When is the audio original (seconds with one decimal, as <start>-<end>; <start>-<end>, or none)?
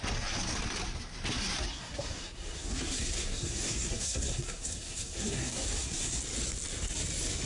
0.0-1.7; 6.2-7.5